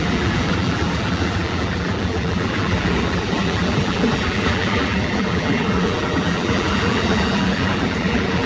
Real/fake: fake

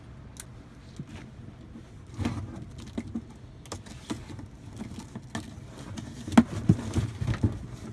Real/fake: real